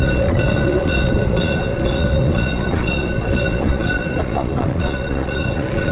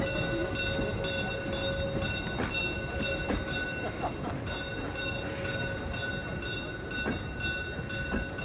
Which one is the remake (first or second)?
first